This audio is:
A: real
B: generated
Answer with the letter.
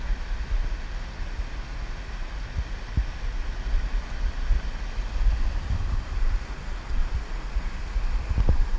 A